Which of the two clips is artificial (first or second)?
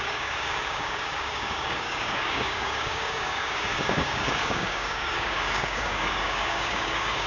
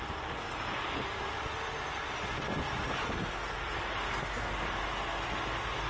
first